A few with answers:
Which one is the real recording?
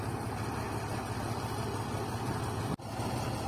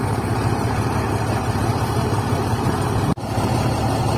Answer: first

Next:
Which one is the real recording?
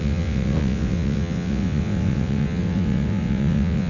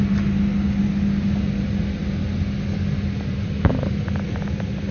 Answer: second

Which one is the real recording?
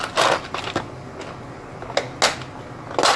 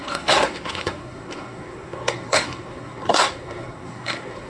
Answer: first